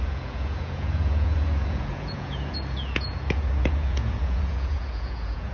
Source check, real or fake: fake